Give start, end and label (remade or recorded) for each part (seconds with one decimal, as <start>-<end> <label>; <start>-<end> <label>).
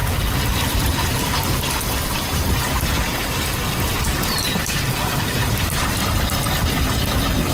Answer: 0.0-7.5 recorded